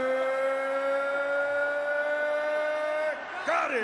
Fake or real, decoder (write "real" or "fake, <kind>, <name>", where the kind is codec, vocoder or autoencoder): real